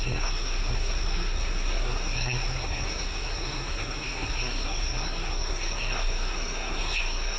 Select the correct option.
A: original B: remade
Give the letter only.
B